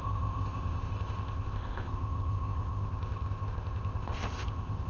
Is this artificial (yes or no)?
yes